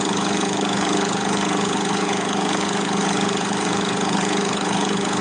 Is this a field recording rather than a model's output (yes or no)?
no